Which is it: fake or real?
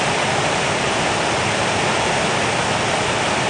real